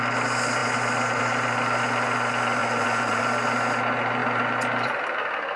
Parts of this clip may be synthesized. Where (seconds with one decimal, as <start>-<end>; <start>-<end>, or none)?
2.6-3.2